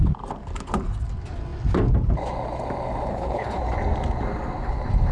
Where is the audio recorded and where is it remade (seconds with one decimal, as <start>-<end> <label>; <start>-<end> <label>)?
0.0-3.1 recorded; 3.1-3.6 remade; 3.6-5.1 recorded